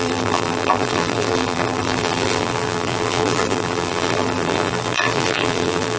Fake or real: fake